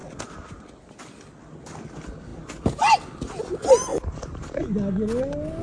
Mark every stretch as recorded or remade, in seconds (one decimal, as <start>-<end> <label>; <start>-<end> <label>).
0.0-3.9 recorded; 3.9-4.6 remade; 4.6-5.6 recorded